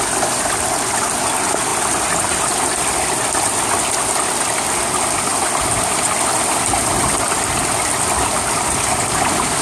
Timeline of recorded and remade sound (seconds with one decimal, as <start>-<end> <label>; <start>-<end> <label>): 0.0-1.7 recorded; 1.7-3.8 remade; 3.8-9.6 recorded